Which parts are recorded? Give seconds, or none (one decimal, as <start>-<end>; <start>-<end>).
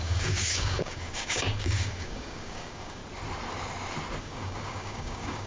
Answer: 3.0-4.2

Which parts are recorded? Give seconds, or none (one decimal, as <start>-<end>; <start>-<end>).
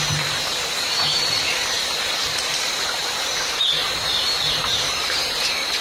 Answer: none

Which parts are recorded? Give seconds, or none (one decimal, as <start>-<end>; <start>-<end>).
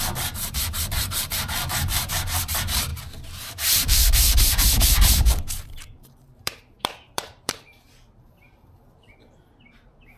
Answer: 2.9-3.5